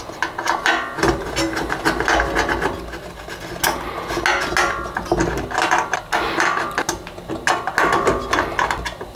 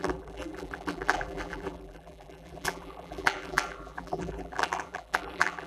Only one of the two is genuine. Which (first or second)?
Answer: first